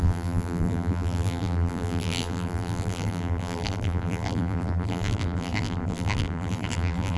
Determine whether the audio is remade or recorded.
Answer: remade